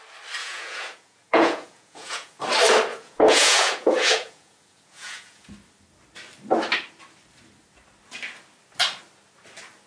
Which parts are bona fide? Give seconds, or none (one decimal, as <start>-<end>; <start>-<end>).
0.0-0.4; 2.4-2.9; 5.5-9.9